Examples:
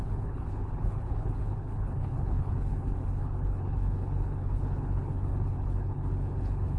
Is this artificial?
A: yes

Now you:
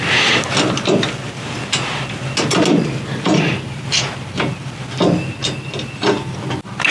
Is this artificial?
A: no